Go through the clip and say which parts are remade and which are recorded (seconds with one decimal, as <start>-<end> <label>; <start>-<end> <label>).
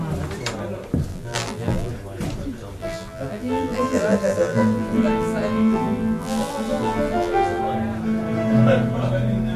0.0-1.1 recorded; 1.1-1.9 remade; 1.9-2.8 recorded; 2.8-7.6 remade; 7.6-9.6 recorded